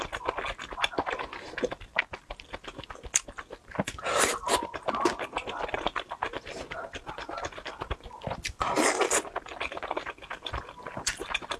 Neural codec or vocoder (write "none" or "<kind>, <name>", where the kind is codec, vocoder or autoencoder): none